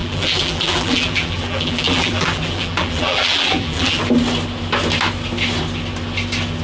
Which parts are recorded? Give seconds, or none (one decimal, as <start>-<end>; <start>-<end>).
4.0-6.6